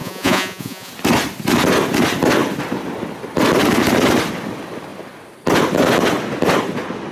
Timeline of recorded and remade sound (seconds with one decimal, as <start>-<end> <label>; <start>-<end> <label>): 0.0-0.9 remade; 0.9-7.1 recorded